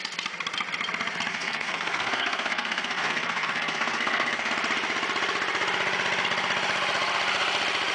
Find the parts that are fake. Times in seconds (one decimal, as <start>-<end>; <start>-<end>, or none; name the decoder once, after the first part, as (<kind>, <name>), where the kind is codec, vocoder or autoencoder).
1.3-4.5 (codec, SNAC)